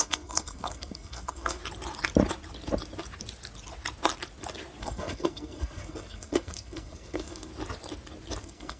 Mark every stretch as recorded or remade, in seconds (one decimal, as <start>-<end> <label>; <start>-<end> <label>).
0.0-1.6 remade; 1.6-4.8 recorded; 4.8-7.5 remade; 7.5-8.4 recorded; 8.4-8.8 remade